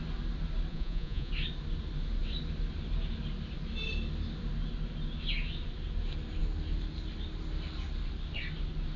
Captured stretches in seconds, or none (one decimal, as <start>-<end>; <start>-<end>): 0.0-0.7; 1.3-9.0